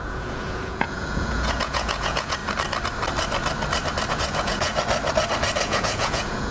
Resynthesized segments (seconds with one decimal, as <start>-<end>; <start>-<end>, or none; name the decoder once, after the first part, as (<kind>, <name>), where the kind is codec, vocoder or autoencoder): 0.0-2.4 (vocoder, Vocos); 4.1-4.7; 5.6-6.5